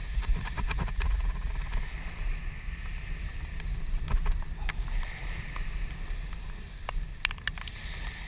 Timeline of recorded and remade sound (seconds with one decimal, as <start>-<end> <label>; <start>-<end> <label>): 0.0-1.5 remade; 1.5-8.3 recorded